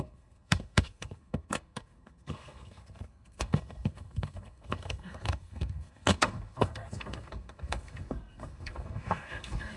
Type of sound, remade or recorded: remade